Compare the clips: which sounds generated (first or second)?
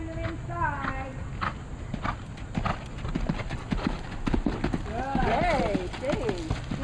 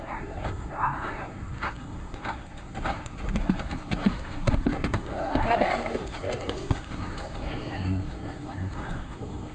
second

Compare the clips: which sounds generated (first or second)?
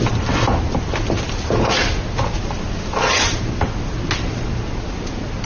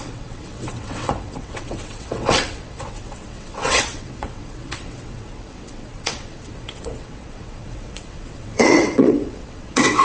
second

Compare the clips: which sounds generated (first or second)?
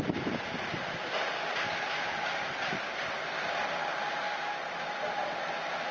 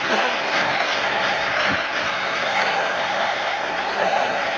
second